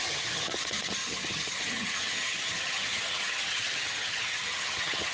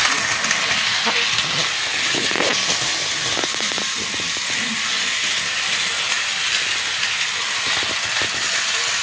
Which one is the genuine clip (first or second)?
second